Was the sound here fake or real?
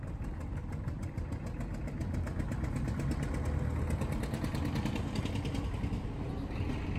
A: real